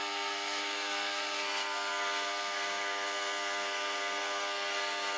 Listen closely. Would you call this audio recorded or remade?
remade